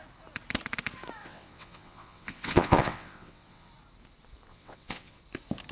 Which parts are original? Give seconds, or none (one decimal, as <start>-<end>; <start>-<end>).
0.0-1.2; 3.7-4.5; 5.2-5.7

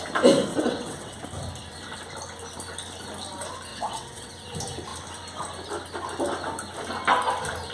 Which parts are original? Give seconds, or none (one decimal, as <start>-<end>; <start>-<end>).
0.0-0.5; 1.2-3.7; 4.3-7.7

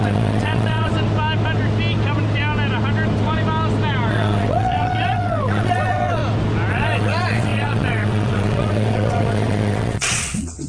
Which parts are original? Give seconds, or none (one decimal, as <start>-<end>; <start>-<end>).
0.9-4.1; 6.2-6.7

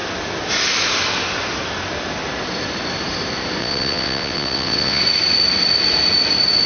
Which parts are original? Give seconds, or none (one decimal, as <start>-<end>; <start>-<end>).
0.0-3.6; 5.0-6.7